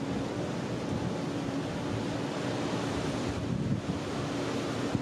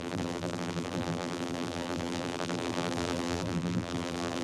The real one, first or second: first